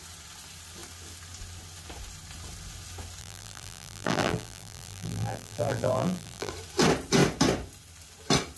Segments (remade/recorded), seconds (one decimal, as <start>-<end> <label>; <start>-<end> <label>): 0.0-3.2 recorded; 3.2-6.5 remade; 6.5-8.6 recorded